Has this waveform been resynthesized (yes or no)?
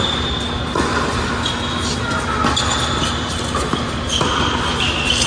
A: no